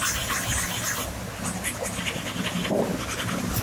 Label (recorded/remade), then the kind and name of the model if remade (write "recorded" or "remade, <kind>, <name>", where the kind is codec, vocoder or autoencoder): recorded